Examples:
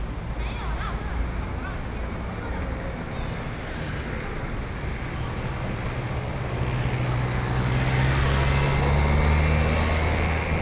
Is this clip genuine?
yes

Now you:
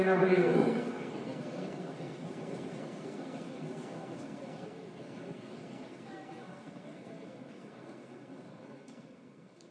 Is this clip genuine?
no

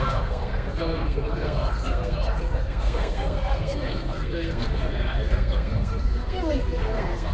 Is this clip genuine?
no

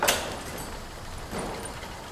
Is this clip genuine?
yes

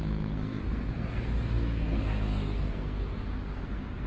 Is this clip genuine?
no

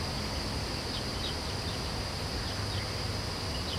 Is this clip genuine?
yes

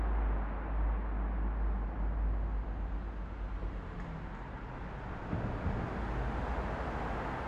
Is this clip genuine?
yes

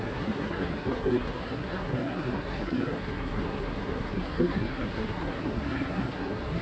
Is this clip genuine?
no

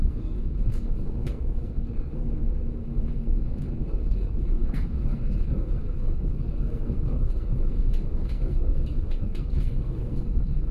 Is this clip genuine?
no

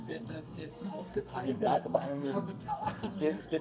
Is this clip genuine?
no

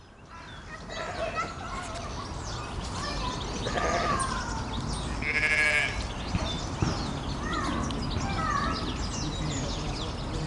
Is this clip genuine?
yes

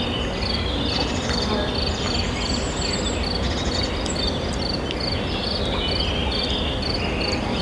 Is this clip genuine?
yes